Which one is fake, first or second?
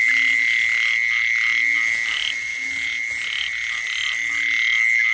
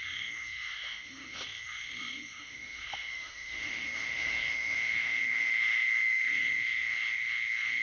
second